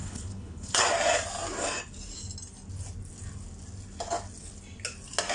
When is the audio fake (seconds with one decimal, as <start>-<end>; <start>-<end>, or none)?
0.0-0.8